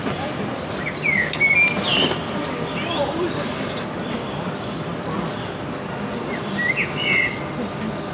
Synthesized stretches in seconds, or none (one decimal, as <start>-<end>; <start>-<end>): none

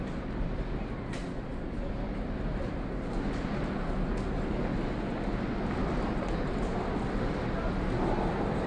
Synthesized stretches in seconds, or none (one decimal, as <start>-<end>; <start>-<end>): none

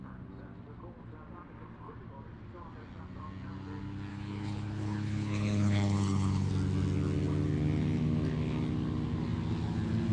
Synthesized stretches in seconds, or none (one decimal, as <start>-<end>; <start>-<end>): 4.1-6.5

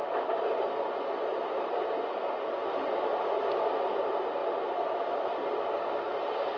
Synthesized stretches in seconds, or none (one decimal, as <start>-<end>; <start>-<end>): none

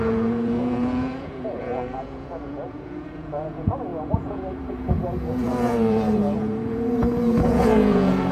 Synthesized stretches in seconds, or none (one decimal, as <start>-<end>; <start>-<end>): 0.0-8.3

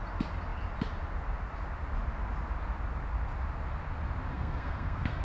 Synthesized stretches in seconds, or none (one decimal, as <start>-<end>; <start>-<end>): 4.3-5.2

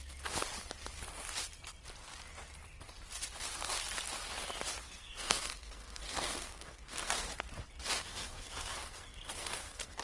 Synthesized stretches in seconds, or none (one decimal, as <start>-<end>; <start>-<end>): 4.8-7.3; 8.0-10.0

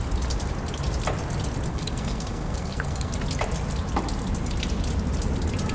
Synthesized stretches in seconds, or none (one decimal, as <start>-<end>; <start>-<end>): 1.7-3.1